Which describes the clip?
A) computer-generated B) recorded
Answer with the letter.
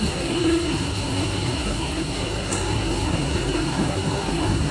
A